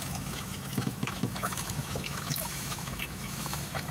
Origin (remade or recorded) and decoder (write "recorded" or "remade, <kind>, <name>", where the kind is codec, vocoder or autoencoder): remade, autoencoder, DAC-VAE